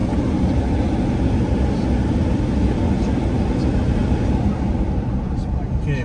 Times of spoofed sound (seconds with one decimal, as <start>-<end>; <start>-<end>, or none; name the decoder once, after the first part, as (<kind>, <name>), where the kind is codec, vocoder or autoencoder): none